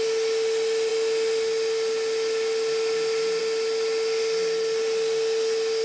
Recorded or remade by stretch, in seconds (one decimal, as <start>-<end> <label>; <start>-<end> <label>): 0.0-5.8 recorded